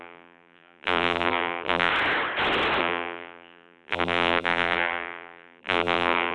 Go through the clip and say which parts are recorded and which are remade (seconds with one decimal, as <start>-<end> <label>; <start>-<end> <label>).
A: 0.0-1.9 remade; 1.9-2.8 recorded; 2.8-6.3 remade